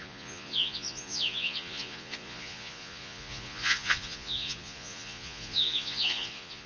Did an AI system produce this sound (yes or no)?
yes